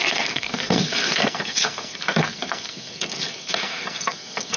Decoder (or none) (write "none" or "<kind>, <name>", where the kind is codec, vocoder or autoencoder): codec, SNAC